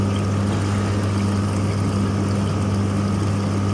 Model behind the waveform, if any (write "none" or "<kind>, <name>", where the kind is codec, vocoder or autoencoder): none